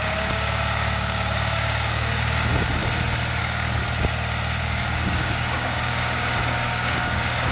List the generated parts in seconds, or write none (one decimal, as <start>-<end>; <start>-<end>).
0.0-2.8; 3.4-3.8; 4.6-7.5